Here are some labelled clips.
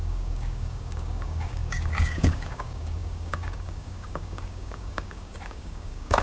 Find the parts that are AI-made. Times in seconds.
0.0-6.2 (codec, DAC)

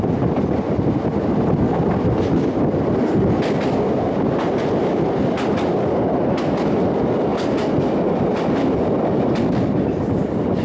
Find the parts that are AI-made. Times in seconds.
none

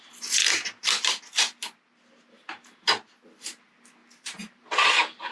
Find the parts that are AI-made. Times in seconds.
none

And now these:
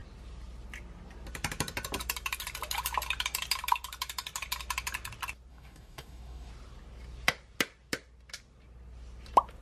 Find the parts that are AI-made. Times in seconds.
5.5-6.5 (codec, DAC)

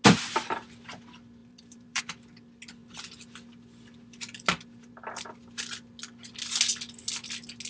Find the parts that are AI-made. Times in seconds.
1.4-2.0 (vocoder, BigVGAN v2)

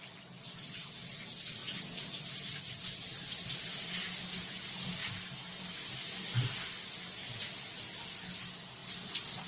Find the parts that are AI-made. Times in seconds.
0.0-1.6 (vocoder, BigVGAN v2); 2.6-7.2; 8.1-9.5